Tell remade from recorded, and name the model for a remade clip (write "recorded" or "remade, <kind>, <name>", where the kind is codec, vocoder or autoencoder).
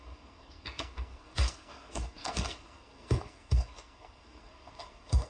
remade, codec, SNAC